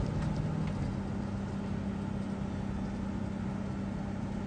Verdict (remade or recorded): recorded